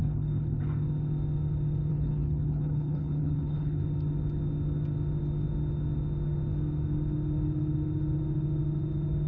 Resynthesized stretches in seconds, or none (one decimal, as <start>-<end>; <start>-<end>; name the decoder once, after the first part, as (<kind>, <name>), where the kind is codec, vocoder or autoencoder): 0.0-0.6 (codec, HILCodec); 1.9-3.8

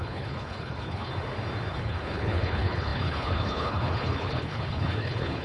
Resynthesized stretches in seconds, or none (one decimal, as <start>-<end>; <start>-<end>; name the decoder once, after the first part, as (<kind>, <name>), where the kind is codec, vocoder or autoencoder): 0.0-1.1 (codec, HILCodec); 1.7-5.4

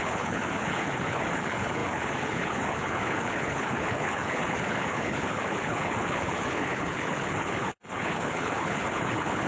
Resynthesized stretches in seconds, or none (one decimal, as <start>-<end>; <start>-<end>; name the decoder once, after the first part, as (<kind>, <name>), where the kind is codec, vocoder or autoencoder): 0.0-9.5 (codec, HILCodec)

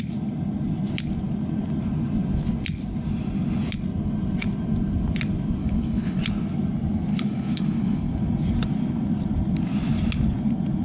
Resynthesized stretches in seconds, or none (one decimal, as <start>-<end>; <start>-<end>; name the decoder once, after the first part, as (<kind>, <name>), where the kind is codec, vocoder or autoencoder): 5.6-6.2 (codec, HILCodec); 7.1-8.1

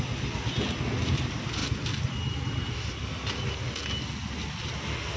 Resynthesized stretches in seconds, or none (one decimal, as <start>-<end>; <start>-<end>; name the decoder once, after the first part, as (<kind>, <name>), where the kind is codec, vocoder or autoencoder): none

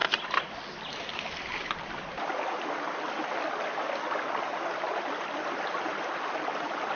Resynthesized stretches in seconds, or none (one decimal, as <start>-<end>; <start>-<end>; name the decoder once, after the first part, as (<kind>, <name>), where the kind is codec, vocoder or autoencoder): none

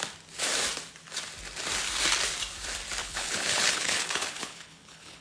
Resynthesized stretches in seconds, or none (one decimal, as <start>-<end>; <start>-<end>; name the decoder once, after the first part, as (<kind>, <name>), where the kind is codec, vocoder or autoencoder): 3.0-5.2 (codec, HILCodec)

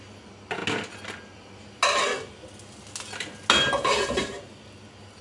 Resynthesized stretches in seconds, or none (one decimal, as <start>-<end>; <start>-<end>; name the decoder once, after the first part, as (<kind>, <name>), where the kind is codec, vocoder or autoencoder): none